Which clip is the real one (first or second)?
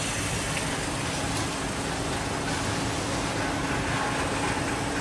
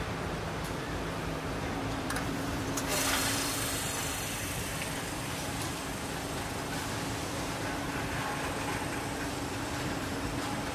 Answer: first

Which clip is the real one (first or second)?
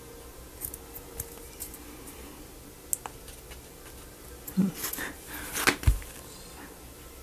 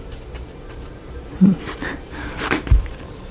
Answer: first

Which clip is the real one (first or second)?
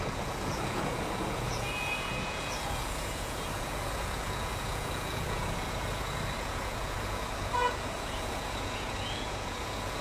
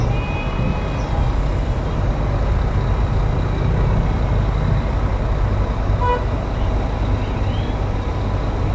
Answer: second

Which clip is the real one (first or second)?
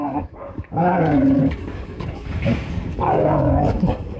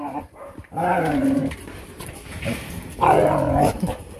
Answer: second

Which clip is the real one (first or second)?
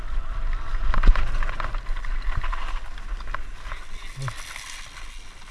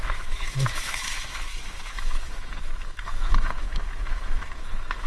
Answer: first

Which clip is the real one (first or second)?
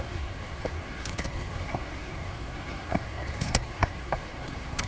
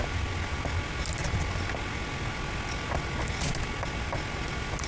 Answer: second